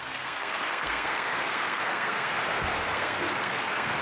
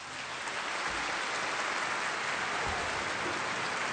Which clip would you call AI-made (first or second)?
first